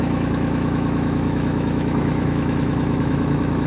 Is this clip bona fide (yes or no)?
no